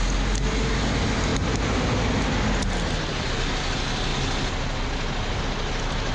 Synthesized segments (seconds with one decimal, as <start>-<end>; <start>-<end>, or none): none